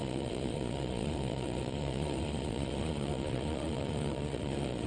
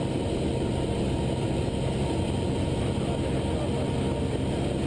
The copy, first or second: first